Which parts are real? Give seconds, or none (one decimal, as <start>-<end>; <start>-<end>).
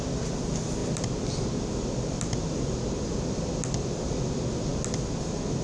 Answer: 0.0-5.6